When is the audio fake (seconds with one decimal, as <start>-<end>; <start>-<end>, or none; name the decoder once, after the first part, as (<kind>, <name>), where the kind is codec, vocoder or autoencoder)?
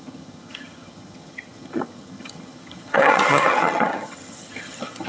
0.0-5.1 (vocoder, HiFi-GAN)